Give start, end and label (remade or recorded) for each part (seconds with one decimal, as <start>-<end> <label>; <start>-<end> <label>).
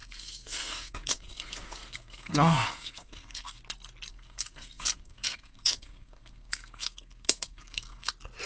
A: 0.0-3.6 remade; 3.6-4.1 recorded; 4.1-8.1 remade; 8.1-8.5 recorded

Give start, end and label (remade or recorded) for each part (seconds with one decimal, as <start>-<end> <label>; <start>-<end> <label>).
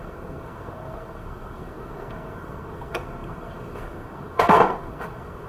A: 0.0-5.5 remade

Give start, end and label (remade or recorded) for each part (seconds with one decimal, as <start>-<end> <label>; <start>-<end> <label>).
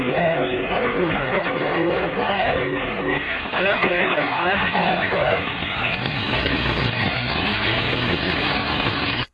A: 0.0-9.3 remade